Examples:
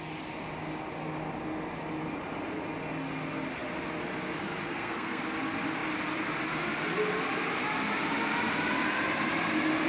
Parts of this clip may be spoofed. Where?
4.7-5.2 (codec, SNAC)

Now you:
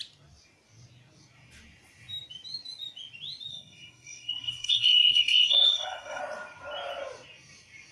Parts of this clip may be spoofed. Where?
3.5-6.2 (codec, SNAC)